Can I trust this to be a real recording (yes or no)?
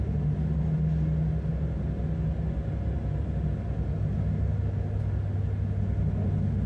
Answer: yes